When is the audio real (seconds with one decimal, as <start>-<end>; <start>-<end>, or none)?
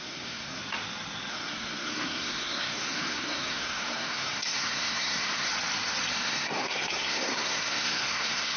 0.6-1.3; 5.5-6.1